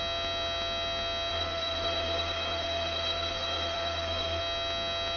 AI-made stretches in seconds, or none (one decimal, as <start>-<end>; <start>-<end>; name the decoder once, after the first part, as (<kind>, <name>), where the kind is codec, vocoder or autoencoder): 1.3-4.4 (codec, SNAC)